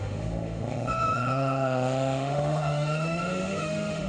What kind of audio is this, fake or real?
fake